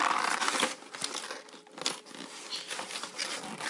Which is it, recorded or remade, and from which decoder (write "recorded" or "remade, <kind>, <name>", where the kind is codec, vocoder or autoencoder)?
recorded